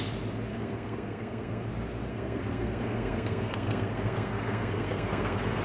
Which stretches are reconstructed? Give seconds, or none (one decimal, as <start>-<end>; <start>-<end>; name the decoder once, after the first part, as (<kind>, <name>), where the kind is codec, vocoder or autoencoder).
0.5-1.7 (codec, SNAC); 2.1-5.6